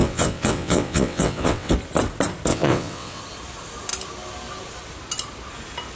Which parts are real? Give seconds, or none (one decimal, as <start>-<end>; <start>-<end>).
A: 1.7-2.5; 3.2-6.0